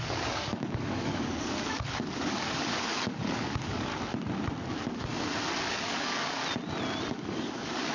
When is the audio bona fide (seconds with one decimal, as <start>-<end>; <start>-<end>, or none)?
3.9-5.7; 6.4-7.1

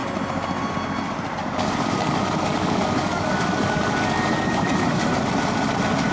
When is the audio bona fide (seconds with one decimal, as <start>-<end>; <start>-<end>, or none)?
0.0-1.4; 5.1-6.1

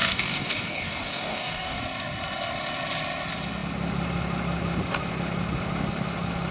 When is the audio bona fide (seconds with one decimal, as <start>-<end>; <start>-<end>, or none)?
1.8-6.5

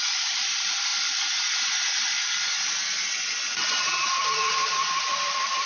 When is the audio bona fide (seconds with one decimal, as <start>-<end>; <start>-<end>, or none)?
0.0-5.7

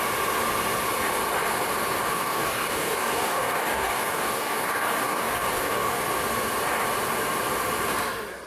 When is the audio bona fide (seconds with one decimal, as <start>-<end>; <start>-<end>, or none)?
0.0-2.0; 6.0-8.5

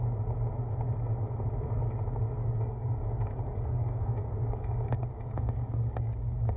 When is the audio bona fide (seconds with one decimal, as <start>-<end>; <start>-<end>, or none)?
0.0-2.4